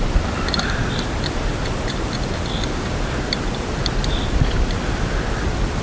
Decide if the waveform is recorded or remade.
recorded